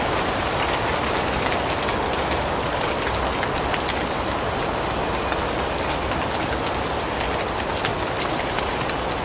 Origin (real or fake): real